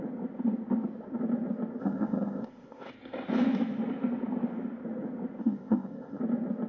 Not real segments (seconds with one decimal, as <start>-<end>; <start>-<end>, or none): 1.8-2.9; 5.4-6.2